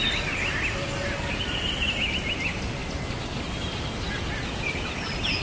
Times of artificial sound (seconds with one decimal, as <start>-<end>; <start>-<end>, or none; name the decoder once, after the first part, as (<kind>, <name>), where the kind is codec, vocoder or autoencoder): none